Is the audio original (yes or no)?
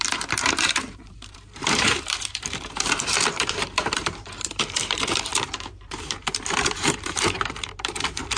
no